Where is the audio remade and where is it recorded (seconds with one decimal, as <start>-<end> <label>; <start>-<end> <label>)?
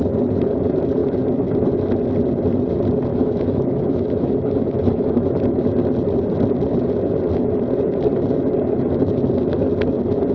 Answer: 0.0-3.1 recorded; 3.1-5.4 remade; 5.4-10.3 recorded